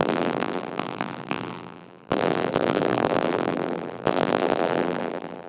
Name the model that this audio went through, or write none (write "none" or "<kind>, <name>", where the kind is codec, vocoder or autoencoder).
vocoder, BigVGAN v2